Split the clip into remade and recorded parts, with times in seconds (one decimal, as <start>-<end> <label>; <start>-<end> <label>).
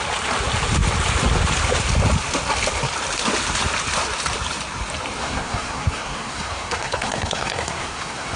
0.0-5.2 recorded; 5.2-8.4 remade